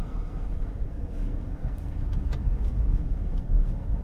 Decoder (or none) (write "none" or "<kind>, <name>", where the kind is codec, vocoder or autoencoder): codec, SNAC